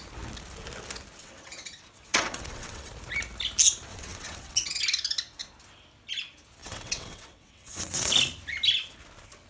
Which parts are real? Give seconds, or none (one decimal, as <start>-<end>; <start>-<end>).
0.0-1.2; 2.9-3.9; 4.8-6.6; 8.1-9.5